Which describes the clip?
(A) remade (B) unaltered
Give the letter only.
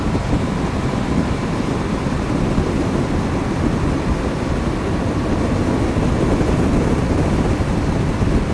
B